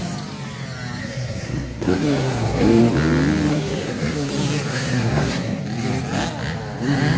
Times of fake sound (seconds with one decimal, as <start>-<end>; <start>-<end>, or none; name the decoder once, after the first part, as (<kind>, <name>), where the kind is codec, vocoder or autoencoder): 1.0-2.8 (codec, SNAC); 3.5-4.3; 4.7-5.6